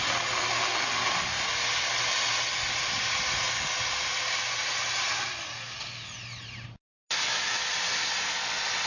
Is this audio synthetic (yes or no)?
no